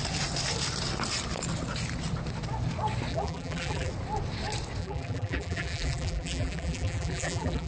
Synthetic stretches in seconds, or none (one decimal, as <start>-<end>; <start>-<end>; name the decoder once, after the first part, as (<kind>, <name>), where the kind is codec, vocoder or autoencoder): 3.1-3.9 (vocoder, BigVGAN v2); 4.8-7.7